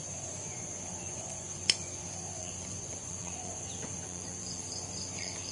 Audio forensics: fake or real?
fake